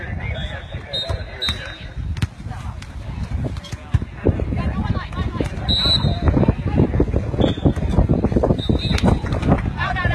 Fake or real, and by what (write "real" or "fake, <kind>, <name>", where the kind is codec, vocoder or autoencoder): real